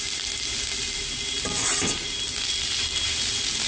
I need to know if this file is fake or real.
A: real